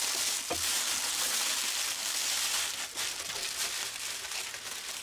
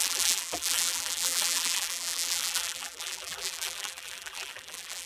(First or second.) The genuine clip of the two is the first